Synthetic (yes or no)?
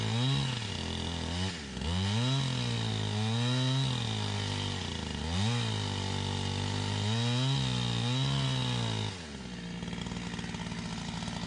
no